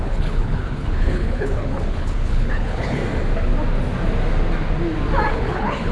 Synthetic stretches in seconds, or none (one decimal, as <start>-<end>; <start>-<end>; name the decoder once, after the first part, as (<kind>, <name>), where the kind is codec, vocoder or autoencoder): 0.0-3.0 (codec, HILCodec); 5.3-5.9

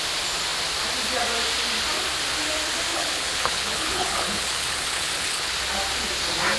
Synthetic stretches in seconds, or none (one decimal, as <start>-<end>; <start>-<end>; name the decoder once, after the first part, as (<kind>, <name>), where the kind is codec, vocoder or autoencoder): 2.9-5.5 (codec, HILCodec)

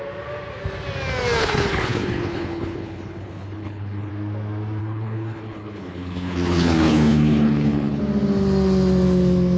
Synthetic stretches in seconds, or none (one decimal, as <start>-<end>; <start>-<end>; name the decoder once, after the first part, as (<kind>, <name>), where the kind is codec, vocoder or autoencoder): 1.4-4.1 (codec, HILCodec); 4.8-8.0

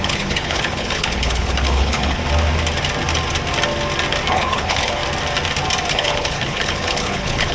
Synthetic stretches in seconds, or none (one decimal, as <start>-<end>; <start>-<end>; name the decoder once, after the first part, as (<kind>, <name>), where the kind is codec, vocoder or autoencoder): 0.0-2.2 (codec, HILCodec); 4.3-5.0; 5.9-7.5